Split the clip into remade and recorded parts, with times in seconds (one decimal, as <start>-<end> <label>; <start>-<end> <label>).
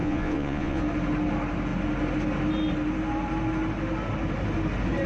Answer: 0.0-0.8 remade; 0.8-5.1 recorded